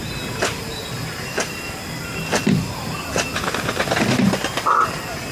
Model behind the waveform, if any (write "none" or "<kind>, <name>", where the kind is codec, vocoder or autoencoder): none